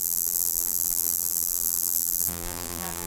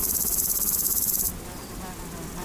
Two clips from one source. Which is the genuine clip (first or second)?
second